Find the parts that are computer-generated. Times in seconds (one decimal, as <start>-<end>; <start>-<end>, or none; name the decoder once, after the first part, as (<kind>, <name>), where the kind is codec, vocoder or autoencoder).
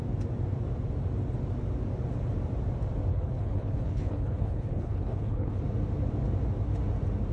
3.1-5.6 (codec, HILCodec)